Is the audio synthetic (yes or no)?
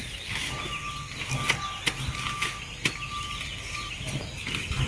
no